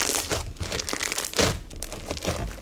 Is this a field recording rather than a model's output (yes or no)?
yes